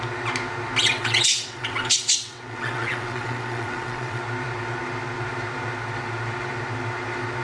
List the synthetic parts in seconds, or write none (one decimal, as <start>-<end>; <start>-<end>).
0.8-4.2